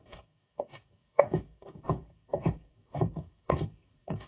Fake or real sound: fake